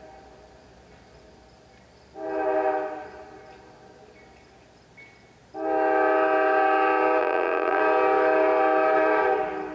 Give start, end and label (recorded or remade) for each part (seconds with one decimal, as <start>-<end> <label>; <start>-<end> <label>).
0.0-7.2 recorded; 7.2-7.8 remade; 7.8-9.7 recorded

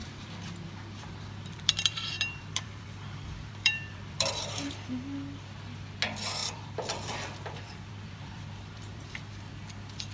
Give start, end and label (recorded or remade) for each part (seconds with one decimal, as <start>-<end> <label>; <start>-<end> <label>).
0.0-4.7 remade; 4.7-6.4 recorded; 6.4-9.3 remade; 9.3-10.1 recorded

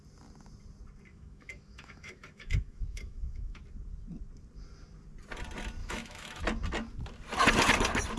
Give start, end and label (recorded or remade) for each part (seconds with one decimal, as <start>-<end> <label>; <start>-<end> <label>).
0.0-1.1 recorded; 1.1-3.6 remade; 3.6-5.8 recorded; 5.8-6.4 remade; 6.4-8.2 recorded

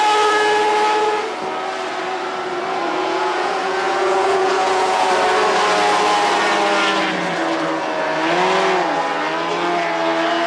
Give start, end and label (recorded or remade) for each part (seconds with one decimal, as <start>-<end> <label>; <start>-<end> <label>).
0.0-3.0 recorded; 3.0-5.1 remade; 5.1-10.5 recorded

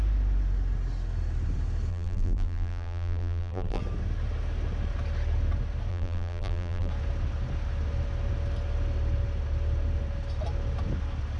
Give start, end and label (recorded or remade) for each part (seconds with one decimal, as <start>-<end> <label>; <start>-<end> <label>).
0.0-1.9 recorded; 1.9-3.8 remade; 3.8-5.9 recorded; 5.9-6.9 remade; 6.9-11.4 recorded

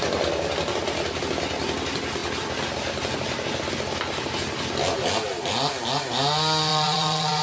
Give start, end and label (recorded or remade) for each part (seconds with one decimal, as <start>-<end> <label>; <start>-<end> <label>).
0.0-6.7 recorded; 6.7-7.4 remade

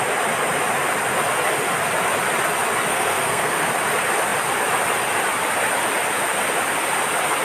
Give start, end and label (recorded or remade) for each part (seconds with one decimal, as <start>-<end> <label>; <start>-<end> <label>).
0.0-2.9 recorded; 2.9-3.7 remade; 3.7-7.4 recorded